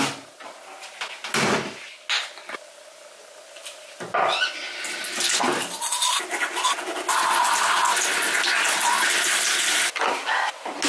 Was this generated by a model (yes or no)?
no